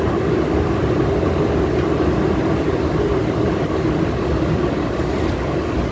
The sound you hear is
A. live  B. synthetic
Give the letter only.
A